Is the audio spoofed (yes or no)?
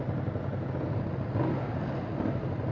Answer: no